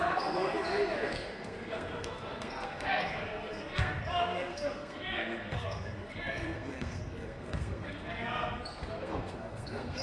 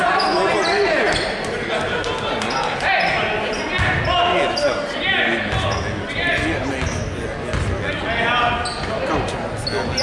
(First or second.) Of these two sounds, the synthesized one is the first